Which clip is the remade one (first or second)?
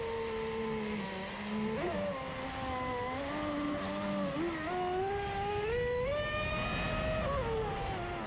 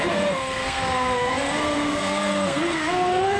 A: second